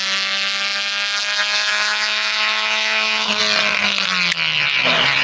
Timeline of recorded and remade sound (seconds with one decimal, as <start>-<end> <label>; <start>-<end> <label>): 0.0-1.7 recorded; 1.7-3.4 remade; 3.4-5.2 recorded

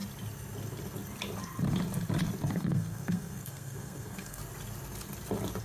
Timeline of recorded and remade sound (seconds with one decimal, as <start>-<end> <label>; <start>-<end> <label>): 0.0-2.5 recorded; 2.5-4.4 remade; 4.4-5.6 recorded

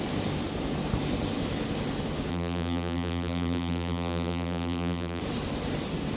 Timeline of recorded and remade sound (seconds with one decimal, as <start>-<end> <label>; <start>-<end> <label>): 0.0-2.3 recorded; 2.3-5.2 remade; 5.2-6.2 recorded